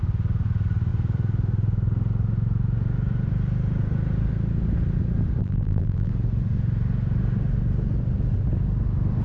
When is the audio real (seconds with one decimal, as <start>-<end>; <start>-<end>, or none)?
0.0-5.4; 6.1-9.2